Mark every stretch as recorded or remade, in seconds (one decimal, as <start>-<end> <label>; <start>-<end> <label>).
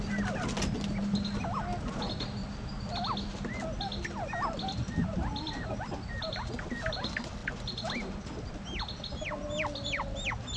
0.0-10.6 recorded